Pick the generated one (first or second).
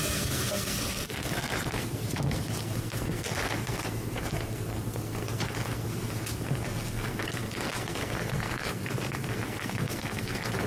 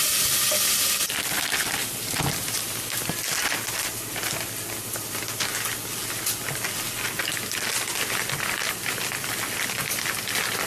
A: first